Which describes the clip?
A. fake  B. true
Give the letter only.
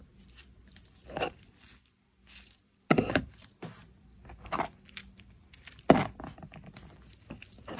A